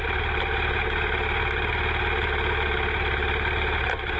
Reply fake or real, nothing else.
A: real